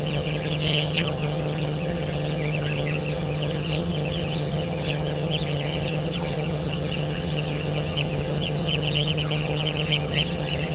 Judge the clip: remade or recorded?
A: remade